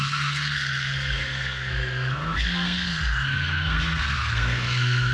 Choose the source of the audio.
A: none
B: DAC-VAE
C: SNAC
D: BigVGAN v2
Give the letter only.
C